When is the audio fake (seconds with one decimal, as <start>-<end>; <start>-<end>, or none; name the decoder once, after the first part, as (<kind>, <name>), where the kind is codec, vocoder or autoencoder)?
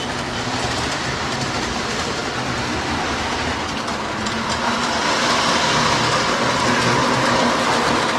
none